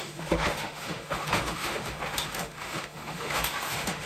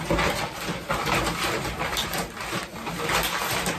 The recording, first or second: second